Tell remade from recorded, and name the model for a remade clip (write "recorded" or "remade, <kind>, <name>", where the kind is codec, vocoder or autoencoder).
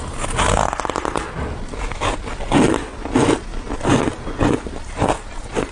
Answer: recorded